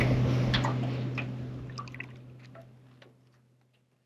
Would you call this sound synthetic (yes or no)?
no